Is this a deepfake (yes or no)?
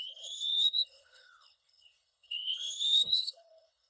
yes